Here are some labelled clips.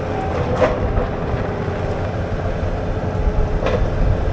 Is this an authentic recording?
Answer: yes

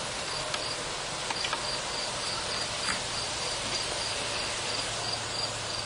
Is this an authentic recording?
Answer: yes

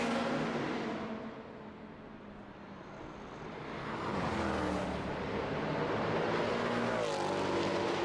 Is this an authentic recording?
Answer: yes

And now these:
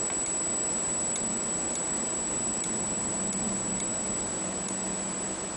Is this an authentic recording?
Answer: yes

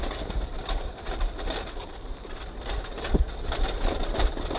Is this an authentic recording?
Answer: no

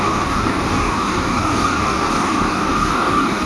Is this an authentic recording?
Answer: no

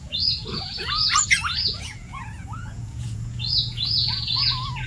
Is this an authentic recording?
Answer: no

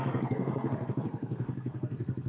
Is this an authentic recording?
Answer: no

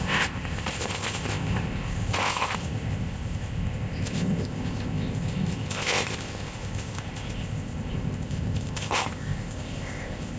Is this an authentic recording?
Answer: no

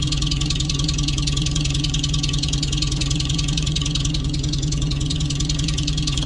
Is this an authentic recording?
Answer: no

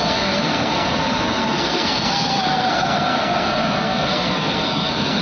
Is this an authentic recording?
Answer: no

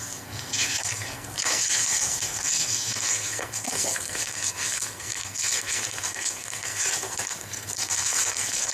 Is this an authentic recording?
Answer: no